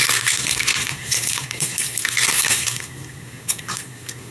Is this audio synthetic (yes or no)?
yes